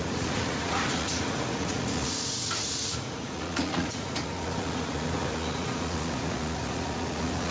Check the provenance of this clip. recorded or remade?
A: remade